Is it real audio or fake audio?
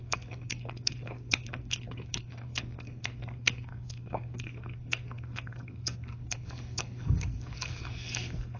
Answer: fake